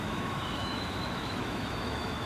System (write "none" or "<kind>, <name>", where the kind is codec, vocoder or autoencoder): autoencoder, DAC-VAE